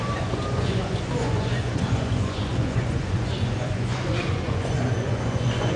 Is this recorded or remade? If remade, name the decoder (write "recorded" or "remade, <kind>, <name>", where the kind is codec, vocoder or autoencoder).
remade, vocoder, Vocos